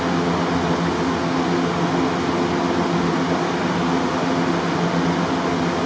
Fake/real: real